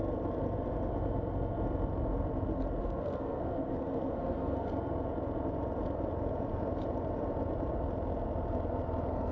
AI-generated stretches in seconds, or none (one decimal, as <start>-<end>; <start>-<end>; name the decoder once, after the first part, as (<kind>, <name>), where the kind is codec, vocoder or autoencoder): 2.8-4.7 (codec, SNAC)